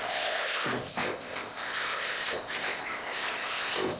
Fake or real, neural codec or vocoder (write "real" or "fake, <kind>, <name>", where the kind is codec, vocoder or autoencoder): fake, codec, ZipCodec